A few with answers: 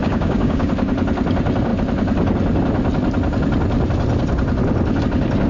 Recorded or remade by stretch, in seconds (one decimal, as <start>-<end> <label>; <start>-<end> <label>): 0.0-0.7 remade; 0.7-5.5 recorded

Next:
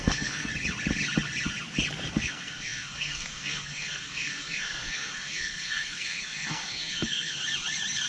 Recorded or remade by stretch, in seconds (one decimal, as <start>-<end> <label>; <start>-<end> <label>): 0.0-0.5 remade; 0.5-2.1 recorded; 2.1-7.4 remade; 7.4-8.1 recorded

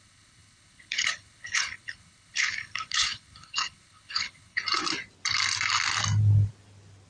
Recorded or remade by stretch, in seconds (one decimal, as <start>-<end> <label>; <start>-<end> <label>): 0.0-4.6 remade; 4.6-7.1 recorded

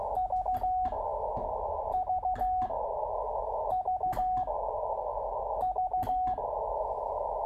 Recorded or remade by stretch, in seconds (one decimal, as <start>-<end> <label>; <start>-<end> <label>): 0.0-7.5 recorded